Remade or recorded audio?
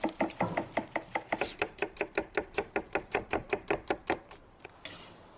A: recorded